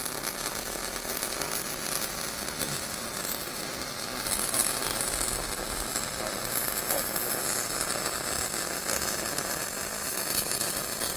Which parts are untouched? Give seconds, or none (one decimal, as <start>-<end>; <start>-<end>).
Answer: 0.0-11.2